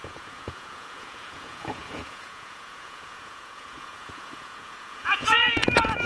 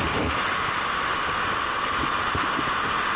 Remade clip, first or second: first